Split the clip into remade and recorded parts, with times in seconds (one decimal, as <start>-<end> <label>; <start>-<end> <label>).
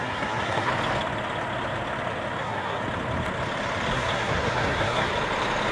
0.0-0.7 remade; 0.7-2.4 recorded; 2.4-2.8 remade; 2.8-3.9 recorded; 3.9-5.1 remade; 5.1-5.7 recorded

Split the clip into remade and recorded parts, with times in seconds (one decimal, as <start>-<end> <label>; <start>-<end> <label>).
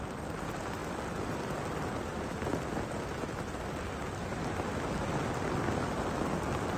0.0-6.8 recorded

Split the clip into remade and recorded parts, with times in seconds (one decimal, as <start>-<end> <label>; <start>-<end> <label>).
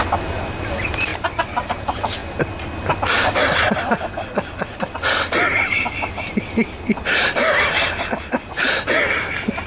0.0-9.7 recorded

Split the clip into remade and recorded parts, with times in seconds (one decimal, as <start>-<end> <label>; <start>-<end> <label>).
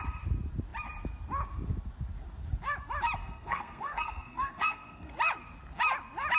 0.0-3.2 recorded; 3.2-5.1 remade; 5.1-6.4 recorded